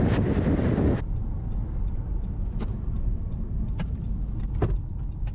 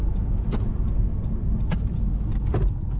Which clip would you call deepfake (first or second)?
first